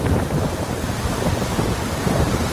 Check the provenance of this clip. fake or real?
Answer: fake